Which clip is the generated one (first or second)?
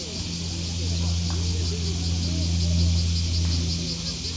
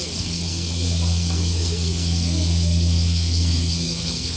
second